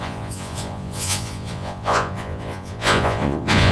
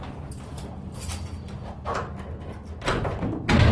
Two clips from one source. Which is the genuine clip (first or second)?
second